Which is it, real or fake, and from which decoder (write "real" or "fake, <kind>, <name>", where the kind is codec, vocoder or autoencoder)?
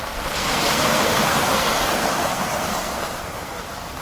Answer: fake, codec, SNAC